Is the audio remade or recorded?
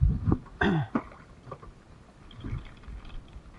recorded